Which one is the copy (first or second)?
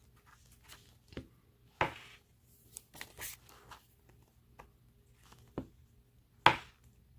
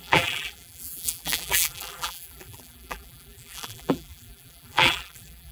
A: second